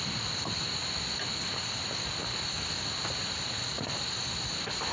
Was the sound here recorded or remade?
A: recorded